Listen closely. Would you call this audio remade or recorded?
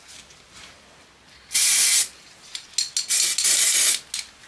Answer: recorded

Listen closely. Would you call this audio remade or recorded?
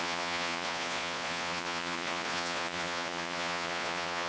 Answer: remade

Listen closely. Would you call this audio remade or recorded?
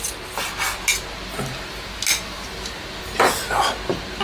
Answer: recorded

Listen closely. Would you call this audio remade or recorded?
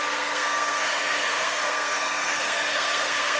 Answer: remade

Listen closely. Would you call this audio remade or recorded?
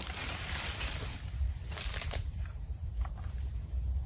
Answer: remade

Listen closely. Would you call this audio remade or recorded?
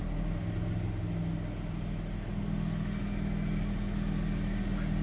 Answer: recorded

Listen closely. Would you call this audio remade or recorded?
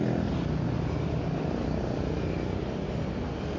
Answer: recorded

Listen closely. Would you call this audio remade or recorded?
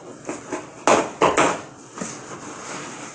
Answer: recorded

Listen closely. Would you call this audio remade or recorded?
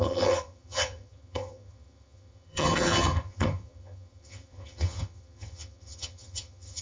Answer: remade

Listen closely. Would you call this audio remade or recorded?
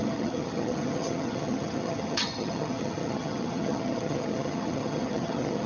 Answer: remade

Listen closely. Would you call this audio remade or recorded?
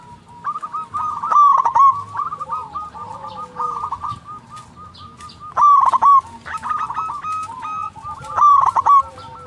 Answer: recorded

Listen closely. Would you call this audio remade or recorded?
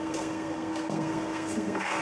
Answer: remade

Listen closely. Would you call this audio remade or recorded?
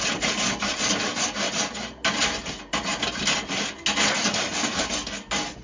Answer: recorded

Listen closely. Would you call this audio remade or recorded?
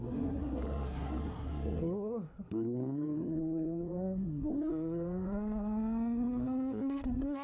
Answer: remade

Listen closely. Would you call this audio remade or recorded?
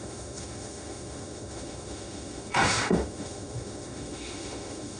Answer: remade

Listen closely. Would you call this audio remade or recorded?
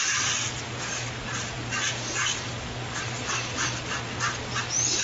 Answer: remade